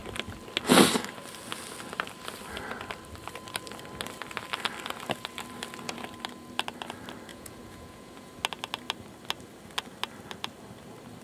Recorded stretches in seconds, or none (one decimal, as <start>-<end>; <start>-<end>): 0.0-7.3; 8.3-11.2